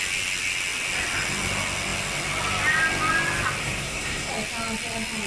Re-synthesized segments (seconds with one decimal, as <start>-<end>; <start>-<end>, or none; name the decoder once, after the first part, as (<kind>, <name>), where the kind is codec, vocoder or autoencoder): 3.6-4.3 (codec, SNAC)